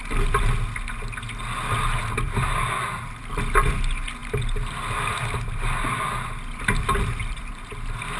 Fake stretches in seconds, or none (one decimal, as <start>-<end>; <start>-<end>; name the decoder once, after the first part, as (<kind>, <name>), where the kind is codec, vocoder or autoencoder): none